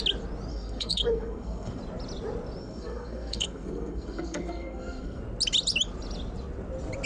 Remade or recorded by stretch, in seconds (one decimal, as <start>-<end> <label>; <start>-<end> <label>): 0.0-0.5 recorded; 0.5-1.8 remade; 1.8-2.6 recorded; 2.6-5.2 remade; 5.2-7.1 recorded